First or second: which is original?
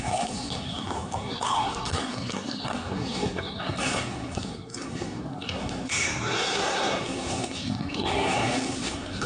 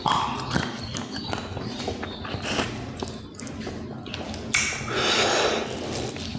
second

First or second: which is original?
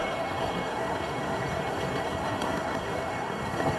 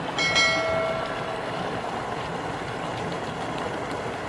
second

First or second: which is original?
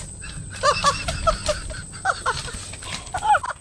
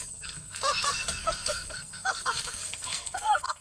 first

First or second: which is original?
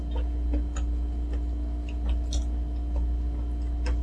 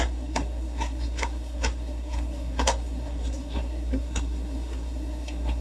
first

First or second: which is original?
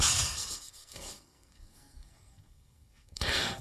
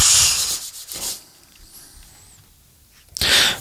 second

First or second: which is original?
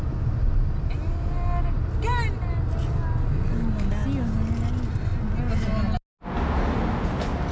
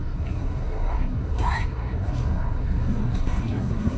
first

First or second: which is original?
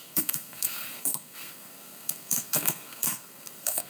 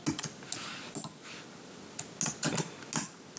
second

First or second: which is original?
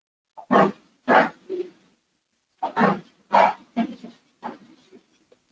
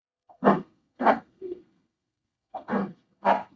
first